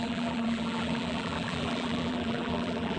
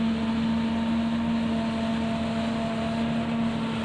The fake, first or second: first